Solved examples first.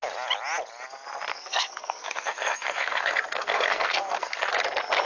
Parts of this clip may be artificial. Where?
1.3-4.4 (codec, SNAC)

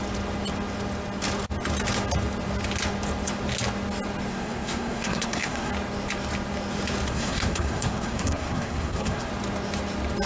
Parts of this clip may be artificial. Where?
4.3-5.7 (codec, SNAC); 7.1-9.3

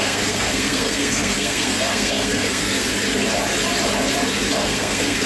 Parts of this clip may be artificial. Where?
0.0-2.9 (codec, SNAC); 4.6-5.3

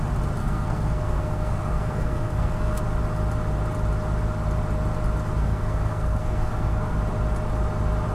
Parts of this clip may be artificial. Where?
0.4-2.8 (codec, SNAC); 5.4-7.0